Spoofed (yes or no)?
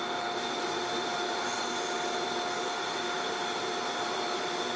no